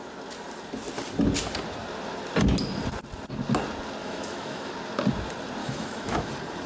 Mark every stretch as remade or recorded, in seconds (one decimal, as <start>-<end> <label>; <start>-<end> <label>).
0.0-4.0 recorded; 4.0-4.7 remade; 4.7-5.6 recorded; 5.6-6.3 remade; 6.3-6.7 recorded